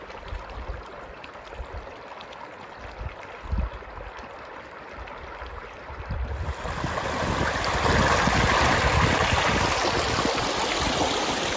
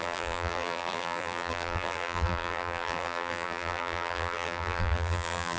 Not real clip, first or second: second